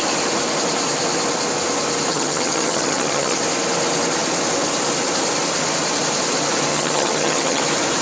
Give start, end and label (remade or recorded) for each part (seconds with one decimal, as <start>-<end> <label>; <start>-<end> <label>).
0.0-2.1 recorded; 2.1-3.4 remade; 3.4-6.7 recorded; 6.7-7.6 remade; 7.6-8.0 recorded